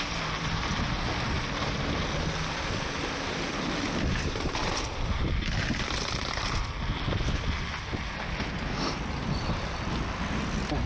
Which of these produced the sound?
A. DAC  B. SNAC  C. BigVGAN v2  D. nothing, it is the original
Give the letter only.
C